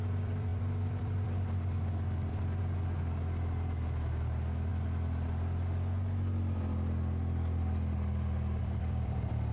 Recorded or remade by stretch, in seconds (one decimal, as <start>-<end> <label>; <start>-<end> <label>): 0.0-4.7 remade; 4.7-8.6 recorded; 8.6-9.5 remade